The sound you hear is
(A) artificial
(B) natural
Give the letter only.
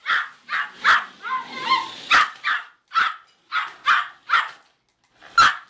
B